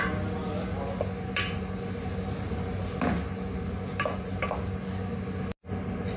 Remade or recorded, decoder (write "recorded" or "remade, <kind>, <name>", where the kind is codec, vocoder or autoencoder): recorded